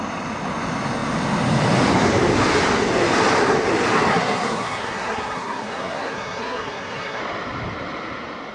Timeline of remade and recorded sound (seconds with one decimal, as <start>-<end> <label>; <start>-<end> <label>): 0.0-4.1 recorded; 4.1-7.2 remade; 7.2-8.5 recorded